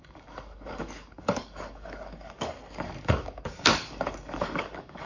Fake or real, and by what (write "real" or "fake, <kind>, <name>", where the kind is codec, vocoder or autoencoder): fake, codec, DAC